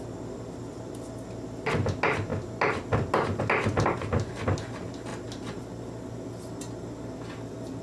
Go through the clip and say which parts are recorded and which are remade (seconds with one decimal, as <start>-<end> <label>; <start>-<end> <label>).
0.0-7.8 recorded